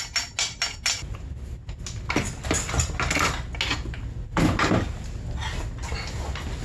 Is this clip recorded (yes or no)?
yes